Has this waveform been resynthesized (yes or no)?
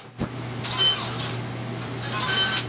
no